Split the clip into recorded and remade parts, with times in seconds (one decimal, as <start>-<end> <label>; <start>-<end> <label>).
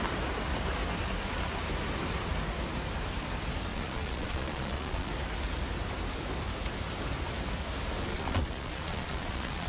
0.0-3.7 recorded; 3.7-5.1 remade; 5.1-8.1 recorded; 8.1-9.7 remade